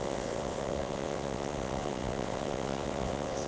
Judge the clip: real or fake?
fake